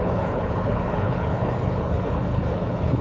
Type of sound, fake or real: fake